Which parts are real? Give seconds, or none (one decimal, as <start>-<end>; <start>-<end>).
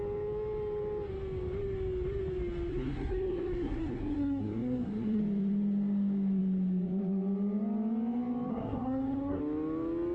0.0-2.7; 5.2-8.5; 9.4-10.1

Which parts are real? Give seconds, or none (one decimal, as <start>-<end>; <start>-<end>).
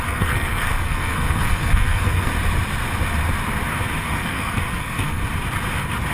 2.3-4.0; 5.2-6.1